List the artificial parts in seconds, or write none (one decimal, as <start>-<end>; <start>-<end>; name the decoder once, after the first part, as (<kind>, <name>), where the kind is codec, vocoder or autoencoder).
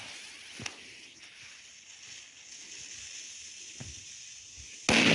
none